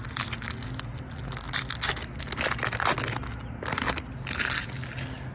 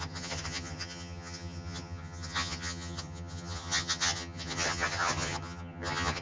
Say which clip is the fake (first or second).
second